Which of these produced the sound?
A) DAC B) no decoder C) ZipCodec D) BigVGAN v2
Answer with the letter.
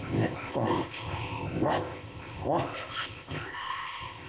C